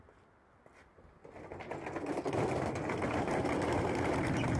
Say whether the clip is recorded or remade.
recorded